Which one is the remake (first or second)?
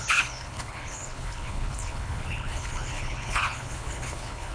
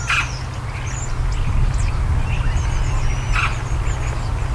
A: first